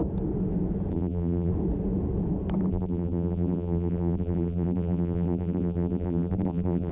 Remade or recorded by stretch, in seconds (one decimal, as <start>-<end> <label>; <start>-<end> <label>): 0.0-0.9 recorded; 0.9-1.5 remade; 1.5-2.7 recorded; 2.7-6.9 remade